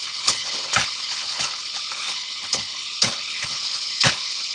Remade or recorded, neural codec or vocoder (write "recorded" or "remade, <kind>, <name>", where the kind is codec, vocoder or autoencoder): remade, codec, HILCodec